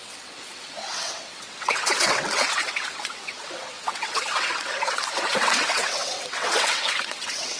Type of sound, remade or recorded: remade